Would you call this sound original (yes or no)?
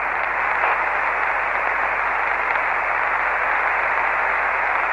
yes